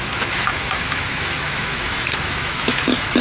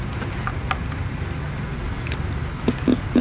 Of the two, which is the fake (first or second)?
first